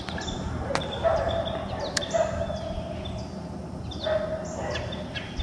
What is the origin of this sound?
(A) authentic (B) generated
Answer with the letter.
A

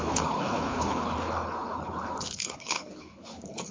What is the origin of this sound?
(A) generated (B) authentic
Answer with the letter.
A